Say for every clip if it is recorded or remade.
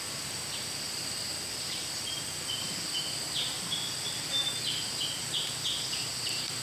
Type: recorded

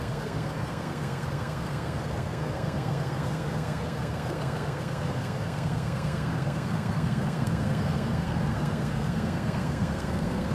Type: remade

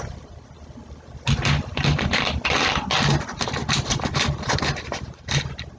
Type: recorded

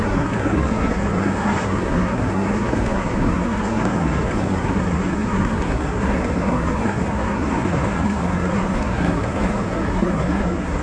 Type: remade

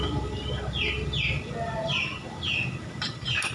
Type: recorded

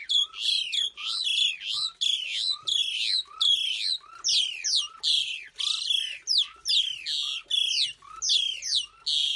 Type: recorded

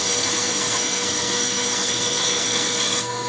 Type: remade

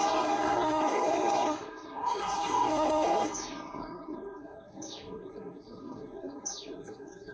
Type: remade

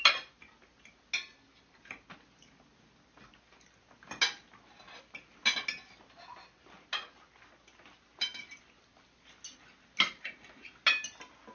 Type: recorded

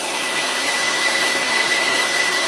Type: remade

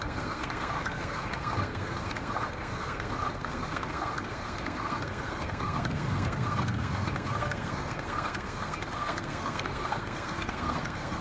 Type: remade